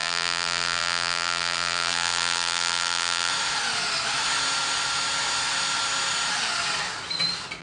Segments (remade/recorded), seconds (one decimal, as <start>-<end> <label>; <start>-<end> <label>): 0.0-3.3 remade; 3.3-7.6 recorded